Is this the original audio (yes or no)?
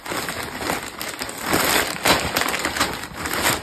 yes